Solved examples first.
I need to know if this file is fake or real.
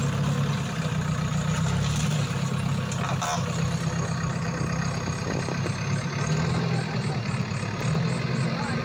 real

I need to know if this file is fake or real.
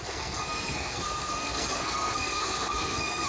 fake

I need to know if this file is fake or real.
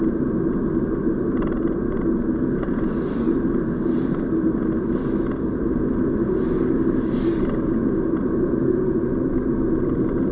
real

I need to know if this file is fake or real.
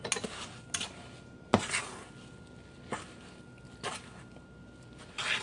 real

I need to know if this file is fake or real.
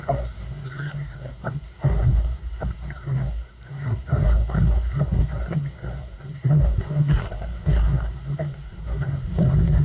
fake